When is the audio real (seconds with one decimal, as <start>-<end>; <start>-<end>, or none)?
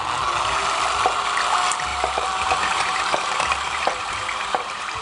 0.0-1.9